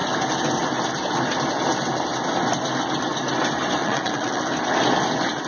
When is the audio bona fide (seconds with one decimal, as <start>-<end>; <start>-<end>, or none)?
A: 0.0-3.8; 4.4-5.5